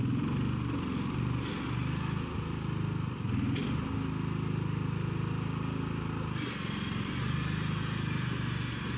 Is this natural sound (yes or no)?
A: yes